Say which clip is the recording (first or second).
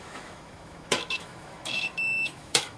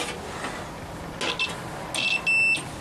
second